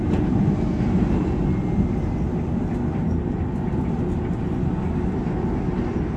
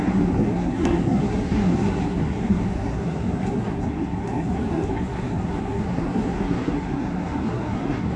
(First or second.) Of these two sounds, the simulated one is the second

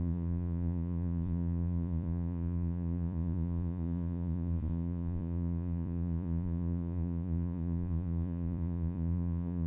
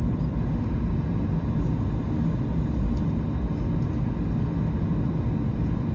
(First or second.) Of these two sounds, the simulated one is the first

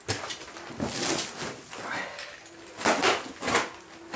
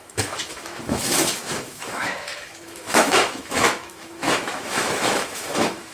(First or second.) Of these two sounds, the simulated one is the second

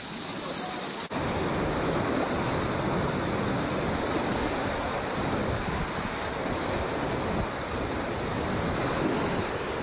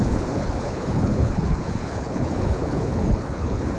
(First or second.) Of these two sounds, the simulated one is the second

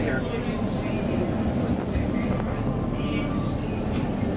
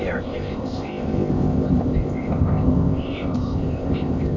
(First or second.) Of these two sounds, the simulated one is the second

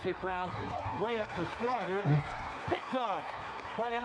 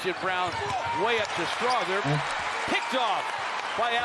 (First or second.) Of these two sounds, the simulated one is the first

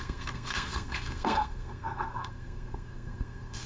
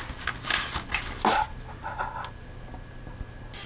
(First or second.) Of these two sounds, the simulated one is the first